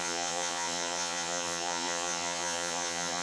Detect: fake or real fake